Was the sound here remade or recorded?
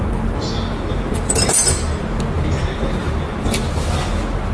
recorded